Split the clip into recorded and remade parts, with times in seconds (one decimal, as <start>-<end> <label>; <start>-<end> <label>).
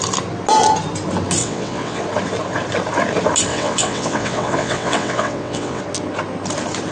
0.0-1.4 recorded; 1.4-2.0 remade; 2.0-3.5 recorded; 3.5-5.8 remade; 5.8-6.9 recorded